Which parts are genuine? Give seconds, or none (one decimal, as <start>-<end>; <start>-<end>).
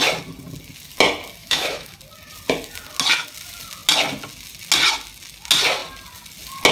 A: 0.0-1.4; 2.0-6.7